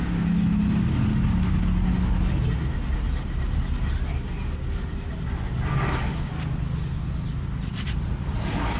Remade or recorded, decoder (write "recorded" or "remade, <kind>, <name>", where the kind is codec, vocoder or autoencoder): recorded